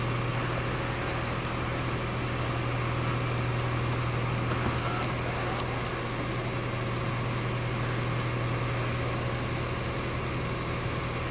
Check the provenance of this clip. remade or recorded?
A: recorded